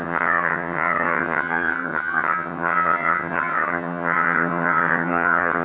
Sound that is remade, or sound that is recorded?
remade